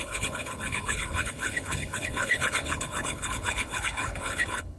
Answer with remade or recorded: remade